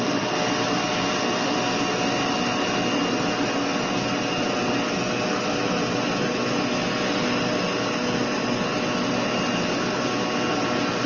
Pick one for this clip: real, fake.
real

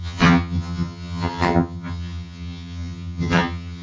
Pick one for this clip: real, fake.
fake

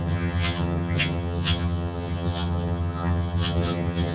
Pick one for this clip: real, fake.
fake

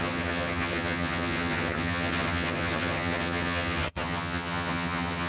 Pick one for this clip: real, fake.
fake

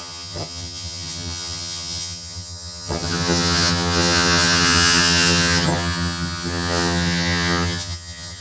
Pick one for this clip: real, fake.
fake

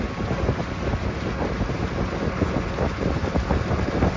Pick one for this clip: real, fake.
real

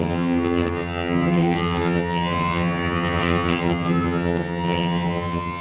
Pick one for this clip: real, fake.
fake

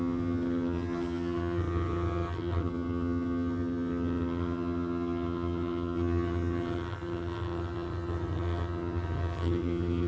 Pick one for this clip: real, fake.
fake